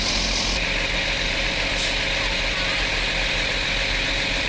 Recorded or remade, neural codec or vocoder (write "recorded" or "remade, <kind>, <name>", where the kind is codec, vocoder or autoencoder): recorded